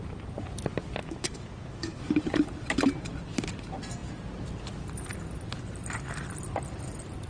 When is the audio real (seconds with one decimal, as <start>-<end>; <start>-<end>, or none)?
0.0-1.0; 2.0-7.3